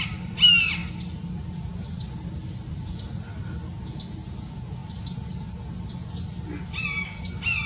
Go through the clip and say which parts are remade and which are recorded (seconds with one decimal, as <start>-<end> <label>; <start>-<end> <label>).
0.0-7.7 recorded